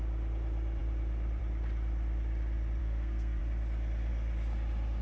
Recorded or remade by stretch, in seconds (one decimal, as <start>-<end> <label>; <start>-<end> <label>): 0.0-2.8 recorded; 2.8-3.4 remade; 3.4-5.0 recorded